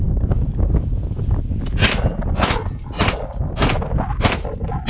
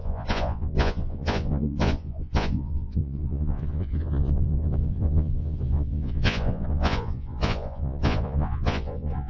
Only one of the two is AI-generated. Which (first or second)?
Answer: second